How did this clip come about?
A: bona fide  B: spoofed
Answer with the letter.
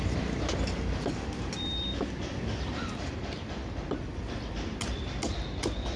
A